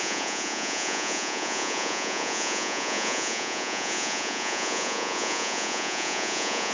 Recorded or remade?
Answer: remade